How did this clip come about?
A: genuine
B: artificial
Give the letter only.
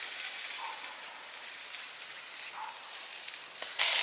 A